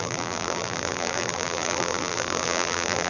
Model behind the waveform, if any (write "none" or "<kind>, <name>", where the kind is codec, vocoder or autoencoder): vocoder, BigVGAN v2